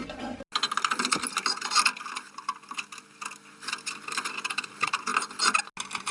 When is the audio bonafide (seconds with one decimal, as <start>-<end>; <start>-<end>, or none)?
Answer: 0.0-6.1

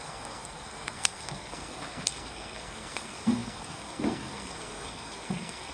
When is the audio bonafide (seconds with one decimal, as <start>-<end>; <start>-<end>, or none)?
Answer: none

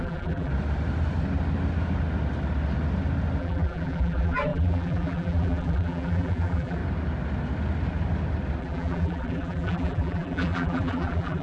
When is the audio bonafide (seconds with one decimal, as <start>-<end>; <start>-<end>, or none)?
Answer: 0.5-3.4; 6.8-8.6

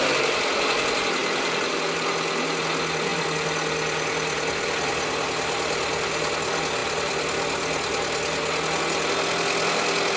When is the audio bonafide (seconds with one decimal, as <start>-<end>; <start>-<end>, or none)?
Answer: 0.0-10.2

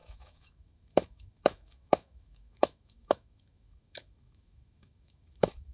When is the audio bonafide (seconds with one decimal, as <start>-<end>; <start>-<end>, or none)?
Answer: none

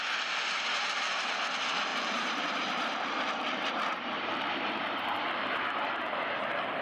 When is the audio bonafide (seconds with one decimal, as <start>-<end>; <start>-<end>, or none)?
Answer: 0.0-1.9; 6.0-6.8

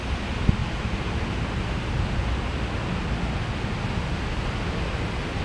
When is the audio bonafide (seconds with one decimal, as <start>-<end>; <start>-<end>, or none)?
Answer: 0.0-0.6; 2.4-5.4

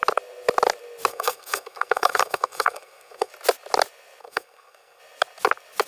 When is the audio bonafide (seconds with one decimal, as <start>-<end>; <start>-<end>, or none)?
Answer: 0.0-1.1; 3.3-4.2; 5.0-5.9